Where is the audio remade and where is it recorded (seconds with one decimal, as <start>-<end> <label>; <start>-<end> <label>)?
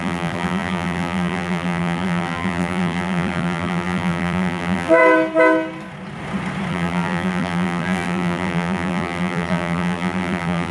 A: 0.0-5.0 remade; 5.0-6.7 recorded; 6.7-10.7 remade